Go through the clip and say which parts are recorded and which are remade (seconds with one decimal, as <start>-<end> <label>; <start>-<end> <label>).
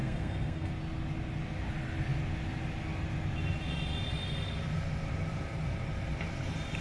0.0-0.7 remade; 0.7-6.8 recorded